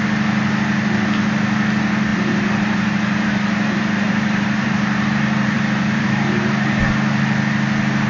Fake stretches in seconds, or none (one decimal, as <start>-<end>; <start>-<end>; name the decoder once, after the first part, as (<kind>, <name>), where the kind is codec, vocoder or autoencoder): 2.1-6.8 (vocoder, BigVGAN v2)